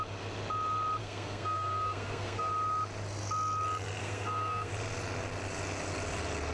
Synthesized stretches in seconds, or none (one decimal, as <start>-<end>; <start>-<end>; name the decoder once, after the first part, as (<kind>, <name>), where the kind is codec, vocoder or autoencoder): 1.0-2.5 (codec, SNAC); 4.0-4.7